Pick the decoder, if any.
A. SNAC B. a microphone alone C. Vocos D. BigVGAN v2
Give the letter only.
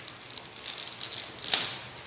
B